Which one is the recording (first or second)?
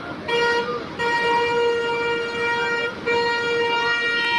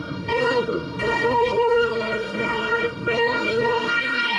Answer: first